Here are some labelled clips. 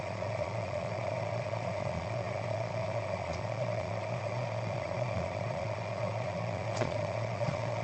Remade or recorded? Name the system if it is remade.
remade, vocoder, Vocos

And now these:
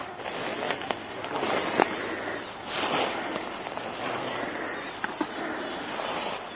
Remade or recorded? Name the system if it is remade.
recorded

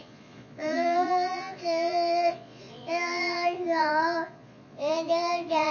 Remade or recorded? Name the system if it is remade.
remade, vocoder, Vocos